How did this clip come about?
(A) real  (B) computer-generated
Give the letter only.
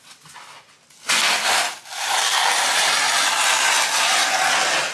A